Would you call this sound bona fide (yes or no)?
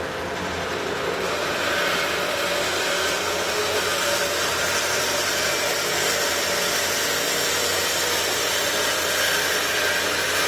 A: no